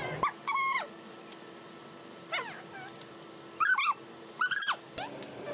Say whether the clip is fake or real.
real